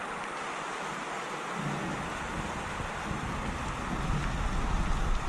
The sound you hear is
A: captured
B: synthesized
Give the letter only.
A